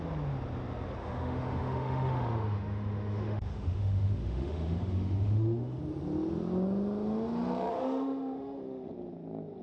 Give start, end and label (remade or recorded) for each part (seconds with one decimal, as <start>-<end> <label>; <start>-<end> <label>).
0.0-1.0 recorded; 1.0-5.8 remade; 5.8-7.7 recorded; 7.7-8.9 remade; 8.9-9.6 recorded